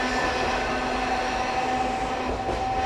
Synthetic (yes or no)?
no